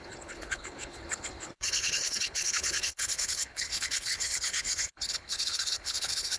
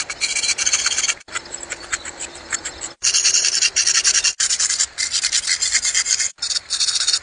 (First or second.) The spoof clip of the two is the first